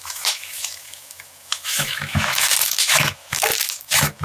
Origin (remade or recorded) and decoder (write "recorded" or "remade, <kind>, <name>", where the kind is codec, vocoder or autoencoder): remade, autoencoder, DAC-VAE